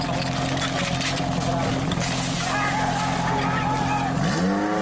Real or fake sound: real